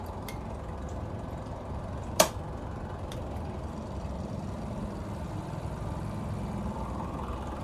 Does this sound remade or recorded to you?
remade